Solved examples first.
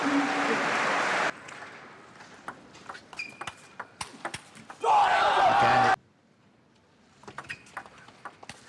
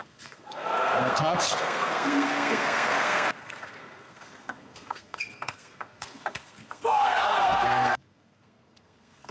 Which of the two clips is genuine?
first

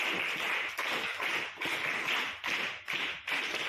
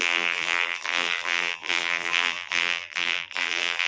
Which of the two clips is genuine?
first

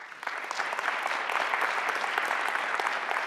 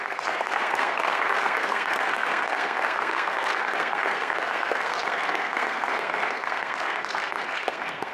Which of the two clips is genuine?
first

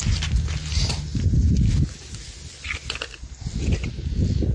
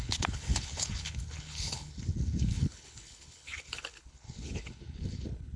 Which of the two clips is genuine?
first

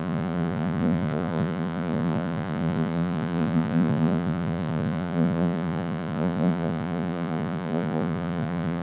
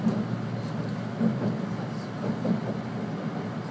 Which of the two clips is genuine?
second